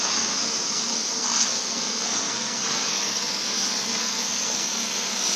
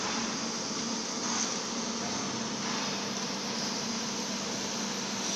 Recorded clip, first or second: second